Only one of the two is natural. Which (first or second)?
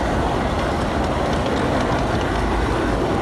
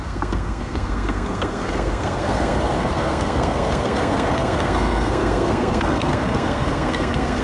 first